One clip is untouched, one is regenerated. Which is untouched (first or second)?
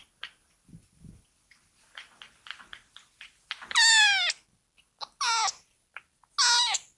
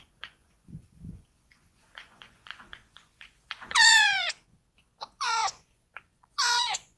first